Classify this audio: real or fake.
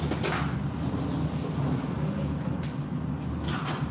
real